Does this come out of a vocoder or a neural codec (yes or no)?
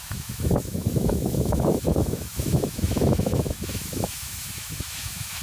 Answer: yes